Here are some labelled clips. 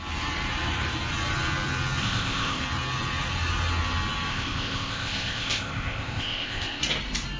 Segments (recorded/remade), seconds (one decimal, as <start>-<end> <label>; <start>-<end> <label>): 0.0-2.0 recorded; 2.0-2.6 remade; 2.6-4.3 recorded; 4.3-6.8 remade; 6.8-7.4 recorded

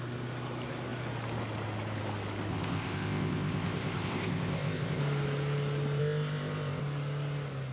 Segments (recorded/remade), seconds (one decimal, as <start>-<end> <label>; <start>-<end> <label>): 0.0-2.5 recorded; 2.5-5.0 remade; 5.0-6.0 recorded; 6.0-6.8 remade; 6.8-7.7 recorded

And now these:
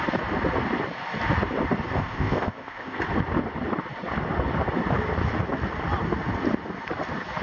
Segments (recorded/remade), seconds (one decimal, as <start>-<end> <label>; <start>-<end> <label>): 0.0-2.0 recorded; 2.0-3.0 remade; 3.0-7.4 recorded

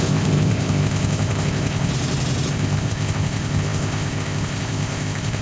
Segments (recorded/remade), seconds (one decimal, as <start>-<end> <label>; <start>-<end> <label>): 0.0-1.9 remade; 1.9-2.5 recorded; 2.5-5.4 remade

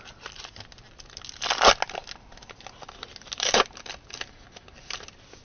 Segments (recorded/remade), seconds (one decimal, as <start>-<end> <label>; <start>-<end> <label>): 0.0-5.4 recorded

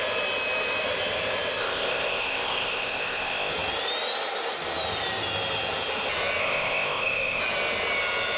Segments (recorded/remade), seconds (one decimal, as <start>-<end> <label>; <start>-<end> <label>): 0.0-1.6 recorded; 1.6-3.5 remade; 3.5-6.4 recorded; 6.4-7.4 remade; 7.4-8.4 recorded

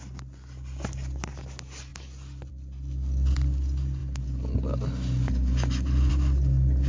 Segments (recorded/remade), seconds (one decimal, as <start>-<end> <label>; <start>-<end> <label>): 0.0-6.9 recorded

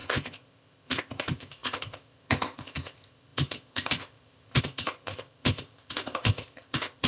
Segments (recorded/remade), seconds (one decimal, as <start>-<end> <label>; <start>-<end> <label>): 0.0-7.1 remade